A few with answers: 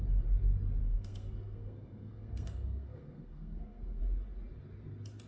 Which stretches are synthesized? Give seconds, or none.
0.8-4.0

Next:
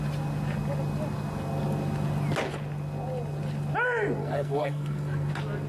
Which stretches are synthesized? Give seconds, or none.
4.2-5.3